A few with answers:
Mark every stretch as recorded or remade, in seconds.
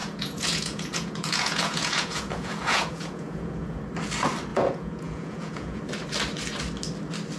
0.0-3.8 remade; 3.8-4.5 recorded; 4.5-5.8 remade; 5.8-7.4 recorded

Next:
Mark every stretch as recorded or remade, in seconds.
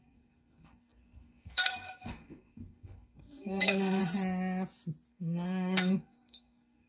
0.0-4.0 remade; 4.0-5.1 recorded; 5.1-6.9 remade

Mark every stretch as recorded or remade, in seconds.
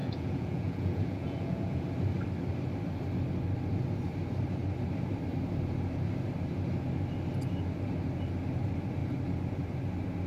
0.0-1.8 remade; 1.8-10.3 recorded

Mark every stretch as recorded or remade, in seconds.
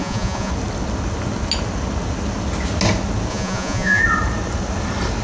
0.0-0.5 remade; 0.5-3.3 recorded; 3.3-4.0 remade; 4.0-5.2 recorded